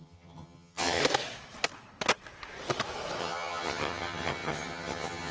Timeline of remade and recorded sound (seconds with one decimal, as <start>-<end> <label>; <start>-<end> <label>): 0.0-1.0 remade; 1.0-3.2 recorded; 3.2-5.3 remade